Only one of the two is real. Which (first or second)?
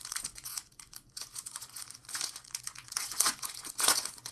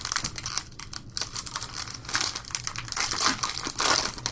second